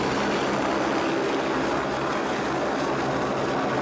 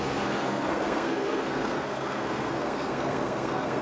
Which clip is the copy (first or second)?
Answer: second